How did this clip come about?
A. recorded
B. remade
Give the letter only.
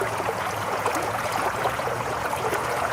B